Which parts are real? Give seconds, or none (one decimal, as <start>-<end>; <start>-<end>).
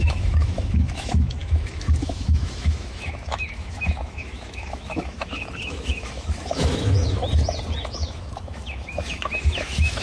7.2-7.8